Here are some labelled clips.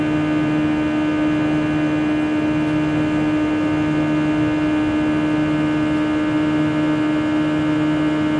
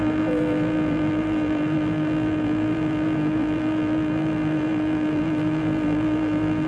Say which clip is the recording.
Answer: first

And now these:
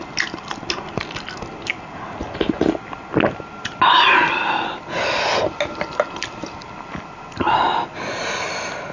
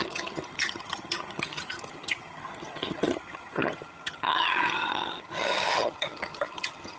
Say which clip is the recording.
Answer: first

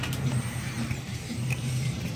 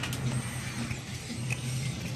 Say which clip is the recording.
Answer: second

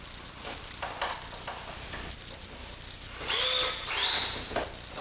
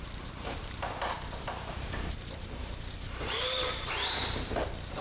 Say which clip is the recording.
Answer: first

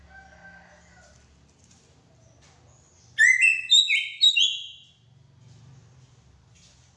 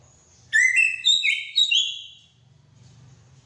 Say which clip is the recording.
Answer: first